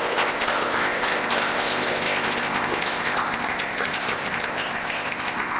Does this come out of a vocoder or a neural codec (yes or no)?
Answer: yes